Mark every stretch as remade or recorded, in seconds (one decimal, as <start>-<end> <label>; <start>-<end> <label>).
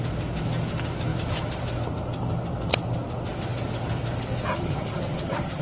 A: 0.0-4.5 recorded; 4.5-5.6 remade